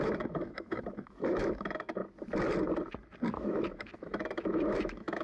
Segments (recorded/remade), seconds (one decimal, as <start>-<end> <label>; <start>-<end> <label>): 0.0-2.0 remade; 2.0-3.3 recorded; 3.3-5.2 remade